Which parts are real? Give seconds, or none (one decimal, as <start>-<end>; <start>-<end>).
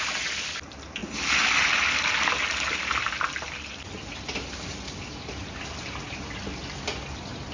0.0-7.5